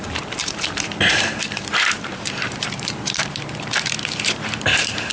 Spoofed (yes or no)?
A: yes